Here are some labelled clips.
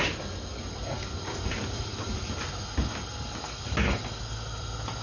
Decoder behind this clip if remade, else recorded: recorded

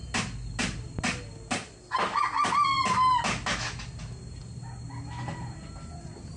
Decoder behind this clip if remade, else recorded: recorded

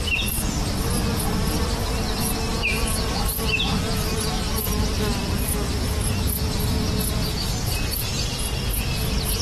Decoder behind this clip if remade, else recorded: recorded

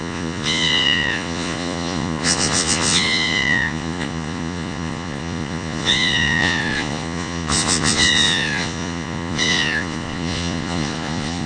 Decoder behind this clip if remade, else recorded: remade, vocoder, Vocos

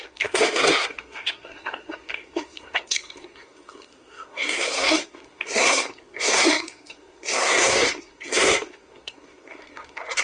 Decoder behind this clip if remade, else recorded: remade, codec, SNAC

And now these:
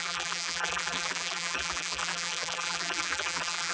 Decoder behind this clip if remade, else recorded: remade, vocoder, BigVGAN v2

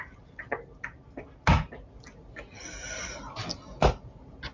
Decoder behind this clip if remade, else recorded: recorded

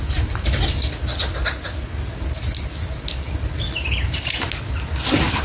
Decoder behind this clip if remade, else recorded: recorded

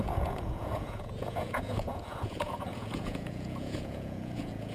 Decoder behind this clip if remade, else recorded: remade, vocoder, Vocos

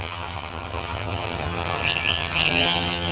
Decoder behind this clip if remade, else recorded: remade, vocoder, HiFi-GAN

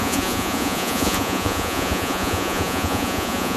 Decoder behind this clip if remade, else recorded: remade, vocoder, Vocos